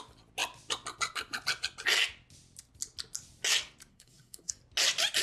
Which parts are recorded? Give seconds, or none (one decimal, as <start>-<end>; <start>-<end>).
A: 0.0-3.9; 4.5-5.2